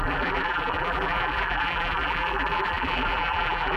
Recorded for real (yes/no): no